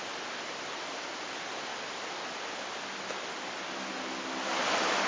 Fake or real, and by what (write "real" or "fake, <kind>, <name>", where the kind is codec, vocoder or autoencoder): real